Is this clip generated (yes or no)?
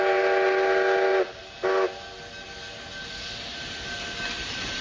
no